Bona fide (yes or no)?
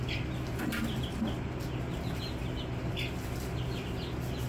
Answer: yes